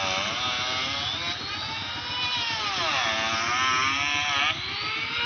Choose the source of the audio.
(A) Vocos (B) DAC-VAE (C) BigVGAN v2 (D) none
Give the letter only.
D